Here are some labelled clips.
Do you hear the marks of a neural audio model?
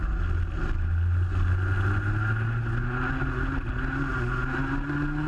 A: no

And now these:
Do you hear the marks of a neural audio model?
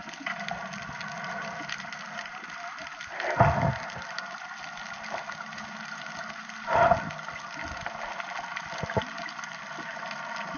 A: no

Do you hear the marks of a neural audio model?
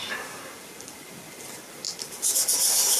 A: no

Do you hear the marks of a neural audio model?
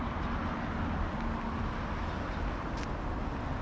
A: no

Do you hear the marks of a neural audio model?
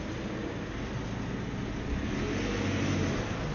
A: no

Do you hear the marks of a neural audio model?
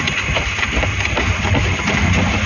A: no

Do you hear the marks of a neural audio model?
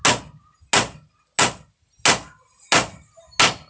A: no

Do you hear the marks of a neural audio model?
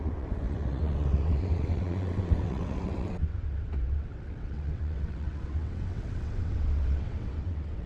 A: yes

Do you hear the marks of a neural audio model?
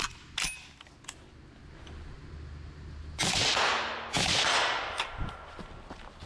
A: no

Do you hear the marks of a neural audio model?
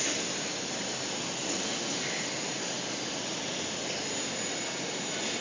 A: no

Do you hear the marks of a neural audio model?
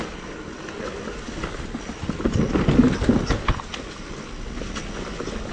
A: no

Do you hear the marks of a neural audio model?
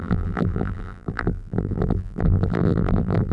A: yes